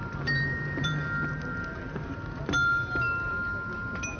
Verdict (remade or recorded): remade